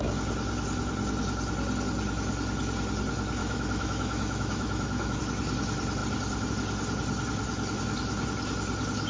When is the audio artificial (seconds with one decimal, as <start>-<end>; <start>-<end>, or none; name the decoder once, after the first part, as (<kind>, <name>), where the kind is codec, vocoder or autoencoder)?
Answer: 3.4-5.2 (autoencoder, DAC-VAE)